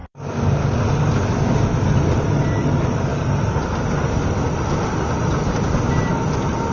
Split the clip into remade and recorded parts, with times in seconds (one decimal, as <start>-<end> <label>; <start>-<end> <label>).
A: 0.0-6.7 recorded